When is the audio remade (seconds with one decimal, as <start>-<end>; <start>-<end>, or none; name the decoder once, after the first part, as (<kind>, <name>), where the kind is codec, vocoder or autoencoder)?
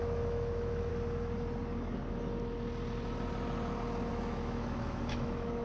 0.0-0.9 (autoencoder, DAC-VAE); 4.1-5.6